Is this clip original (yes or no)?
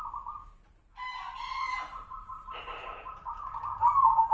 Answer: yes